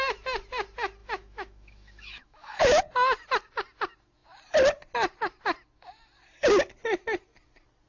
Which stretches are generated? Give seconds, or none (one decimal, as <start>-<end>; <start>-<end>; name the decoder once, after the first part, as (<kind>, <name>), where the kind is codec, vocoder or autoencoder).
1.0-2.8 (autoencoder, DAC-VAE)